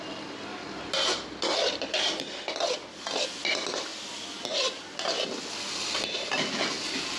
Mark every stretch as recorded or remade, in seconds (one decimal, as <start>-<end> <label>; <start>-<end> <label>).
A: 0.0-7.2 recorded